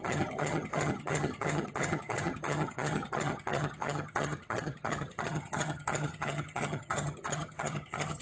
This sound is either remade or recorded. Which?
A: remade